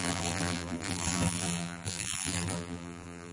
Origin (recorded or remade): remade